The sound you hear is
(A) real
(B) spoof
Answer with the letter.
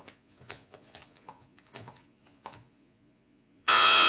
B